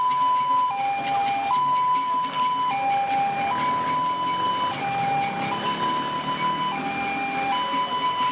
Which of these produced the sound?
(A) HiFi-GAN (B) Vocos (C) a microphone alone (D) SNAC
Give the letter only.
C